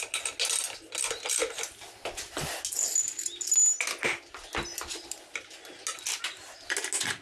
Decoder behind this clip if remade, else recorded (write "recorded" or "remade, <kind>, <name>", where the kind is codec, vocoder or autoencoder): recorded